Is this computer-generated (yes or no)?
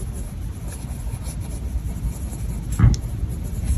no